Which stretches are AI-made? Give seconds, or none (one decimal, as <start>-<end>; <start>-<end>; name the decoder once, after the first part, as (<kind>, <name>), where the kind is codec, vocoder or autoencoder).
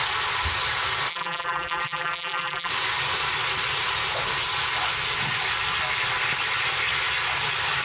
1.1-2.7 (vocoder, BigVGAN v2)